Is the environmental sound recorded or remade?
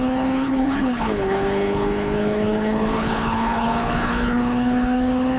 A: remade